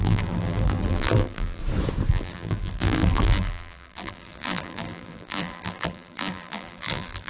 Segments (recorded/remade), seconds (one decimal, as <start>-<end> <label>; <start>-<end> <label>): 0.0-1.6 remade; 1.6-2.1 recorded; 2.1-7.3 remade